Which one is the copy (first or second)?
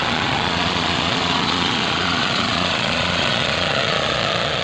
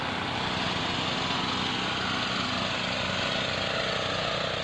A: first